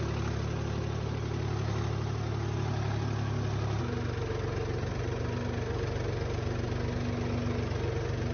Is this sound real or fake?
real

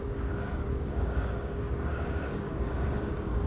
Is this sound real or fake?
fake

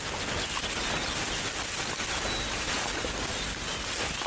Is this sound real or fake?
real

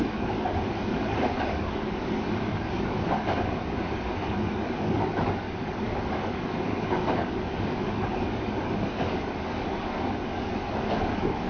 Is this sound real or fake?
fake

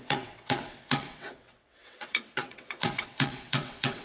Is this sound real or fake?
fake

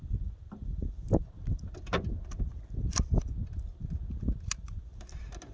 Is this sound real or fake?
real